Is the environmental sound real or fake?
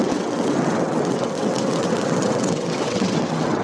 fake